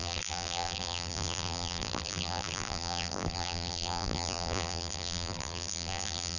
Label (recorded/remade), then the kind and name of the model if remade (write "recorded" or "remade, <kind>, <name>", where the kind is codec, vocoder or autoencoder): remade, vocoder, BigVGAN v2